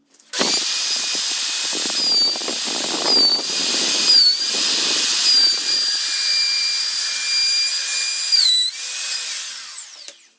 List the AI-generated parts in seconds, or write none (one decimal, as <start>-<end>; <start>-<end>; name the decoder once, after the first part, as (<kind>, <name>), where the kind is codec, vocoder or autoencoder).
3.3-4.5 (vocoder, BigVGAN v2); 5.1-7.0; 7.8-8.7